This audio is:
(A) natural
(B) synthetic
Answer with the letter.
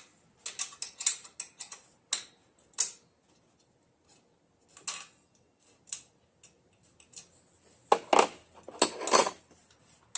A